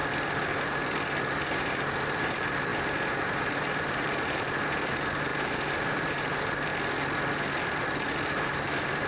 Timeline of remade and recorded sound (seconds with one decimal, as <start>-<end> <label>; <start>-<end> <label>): 0.0-1.3 recorded; 1.3-6.7 remade; 6.7-8.3 recorded; 8.3-9.1 remade